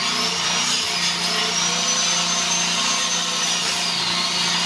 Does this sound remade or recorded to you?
recorded